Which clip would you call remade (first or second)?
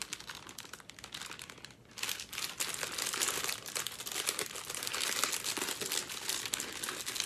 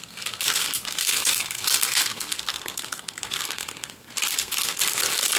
second